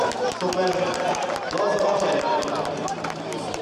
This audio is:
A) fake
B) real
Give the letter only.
A